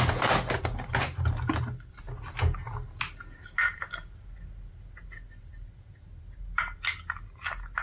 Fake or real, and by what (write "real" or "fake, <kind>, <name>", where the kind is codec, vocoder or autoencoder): real